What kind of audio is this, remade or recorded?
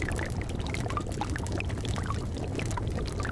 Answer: recorded